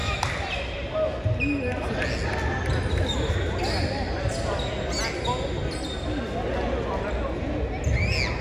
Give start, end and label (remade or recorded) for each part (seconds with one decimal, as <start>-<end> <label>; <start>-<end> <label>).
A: 0.0-8.4 recorded